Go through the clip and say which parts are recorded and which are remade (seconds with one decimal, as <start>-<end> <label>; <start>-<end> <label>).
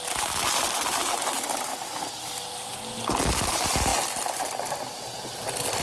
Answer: 0.0-3.9 remade; 3.9-4.7 recorded; 4.7-5.8 remade